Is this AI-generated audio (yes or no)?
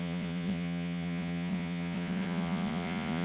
yes